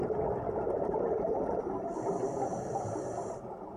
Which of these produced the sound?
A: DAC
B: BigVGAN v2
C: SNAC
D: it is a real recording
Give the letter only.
D